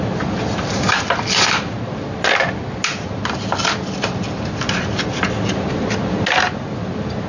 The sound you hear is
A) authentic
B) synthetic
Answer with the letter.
A